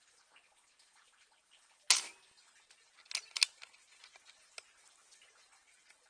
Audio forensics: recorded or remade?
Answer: recorded